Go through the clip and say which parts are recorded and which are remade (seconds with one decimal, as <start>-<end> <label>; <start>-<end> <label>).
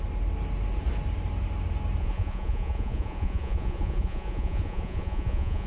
0.0-2.0 recorded; 2.0-5.7 remade